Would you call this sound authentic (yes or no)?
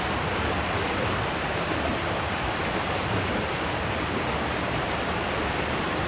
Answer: yes